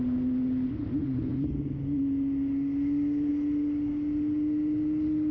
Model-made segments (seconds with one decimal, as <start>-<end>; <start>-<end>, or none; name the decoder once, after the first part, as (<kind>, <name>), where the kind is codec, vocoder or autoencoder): none